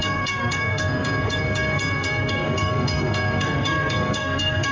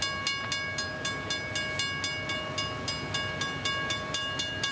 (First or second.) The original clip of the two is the second